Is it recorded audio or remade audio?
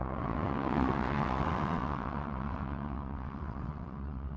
remade